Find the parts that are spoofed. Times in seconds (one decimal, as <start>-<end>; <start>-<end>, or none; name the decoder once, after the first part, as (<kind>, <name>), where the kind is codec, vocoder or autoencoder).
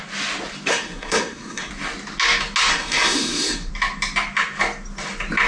0.7-1.7 (codec, SNAC); 2.7-3.7